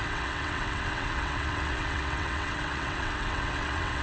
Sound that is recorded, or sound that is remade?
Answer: remade